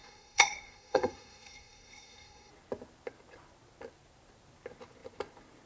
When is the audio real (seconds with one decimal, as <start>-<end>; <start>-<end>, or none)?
2.5-5.7